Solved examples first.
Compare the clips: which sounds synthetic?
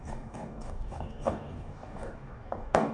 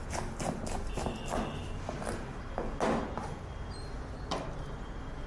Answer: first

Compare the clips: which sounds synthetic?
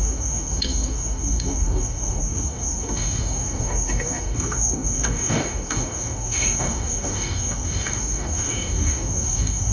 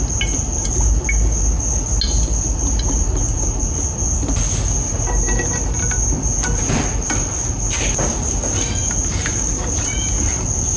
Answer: first